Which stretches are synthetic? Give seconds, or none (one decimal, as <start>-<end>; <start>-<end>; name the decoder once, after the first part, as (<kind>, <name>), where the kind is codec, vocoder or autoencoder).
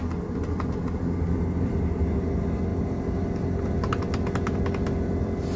none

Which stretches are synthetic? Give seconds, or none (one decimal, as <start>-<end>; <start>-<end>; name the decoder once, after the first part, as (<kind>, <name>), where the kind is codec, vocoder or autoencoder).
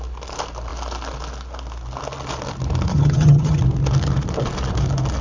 2.9-3.6 (vocoder, HiFi-GAN)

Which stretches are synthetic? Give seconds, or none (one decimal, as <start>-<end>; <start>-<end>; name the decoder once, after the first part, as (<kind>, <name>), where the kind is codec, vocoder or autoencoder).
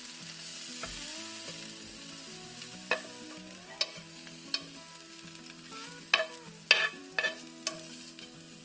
none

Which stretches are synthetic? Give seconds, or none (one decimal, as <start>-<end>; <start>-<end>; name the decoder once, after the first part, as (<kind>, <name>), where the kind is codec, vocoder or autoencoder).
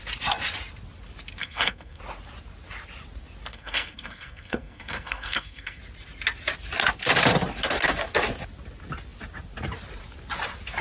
1.4-2.0 (codec, SNAC); 3.5-5.8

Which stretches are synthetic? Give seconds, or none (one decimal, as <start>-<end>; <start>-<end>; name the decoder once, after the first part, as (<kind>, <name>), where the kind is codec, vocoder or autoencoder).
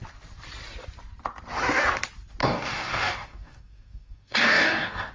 2.4-5.1 (codec, DAC)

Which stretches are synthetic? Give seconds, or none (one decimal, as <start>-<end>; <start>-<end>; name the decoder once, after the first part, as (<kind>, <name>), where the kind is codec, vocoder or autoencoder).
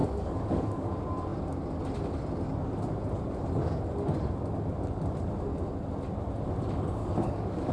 0.0-0.9 (codec, DAC); 7.0-7.7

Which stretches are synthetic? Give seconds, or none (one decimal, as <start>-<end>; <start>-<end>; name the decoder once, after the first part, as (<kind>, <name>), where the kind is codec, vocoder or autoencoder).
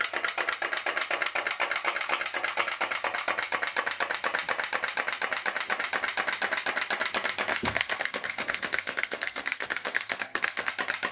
7.5-10.7 (codec, SNAC)